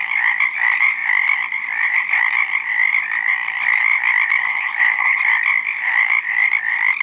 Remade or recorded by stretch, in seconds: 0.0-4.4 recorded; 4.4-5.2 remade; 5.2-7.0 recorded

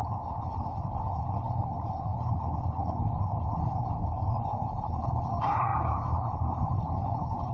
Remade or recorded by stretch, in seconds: 0.0-7.5 remade

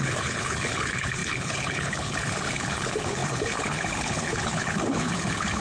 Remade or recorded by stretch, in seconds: 0.0-5.6 remade

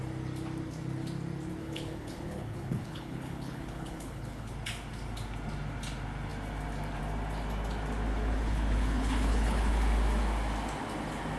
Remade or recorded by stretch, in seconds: 0.0-1.6 recorded; 1.6-4.5 remade; 4.5-8.1 recorded; 8.1-9.7 remade; 9.7-11.4 recorded